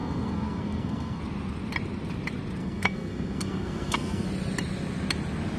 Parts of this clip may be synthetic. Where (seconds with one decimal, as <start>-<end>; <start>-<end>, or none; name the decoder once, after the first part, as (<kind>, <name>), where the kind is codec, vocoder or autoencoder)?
0.0-1.2 (codec, SNAC); 2.6-4.3